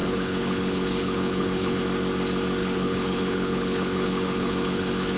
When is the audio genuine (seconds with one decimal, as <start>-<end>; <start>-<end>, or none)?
1.8-2.6